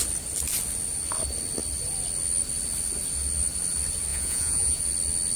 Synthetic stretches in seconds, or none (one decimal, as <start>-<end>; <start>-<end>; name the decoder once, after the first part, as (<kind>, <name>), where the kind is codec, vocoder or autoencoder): 4.1-4.8 (vocoder, Vocos)